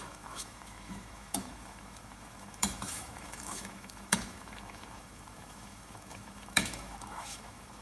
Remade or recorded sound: remade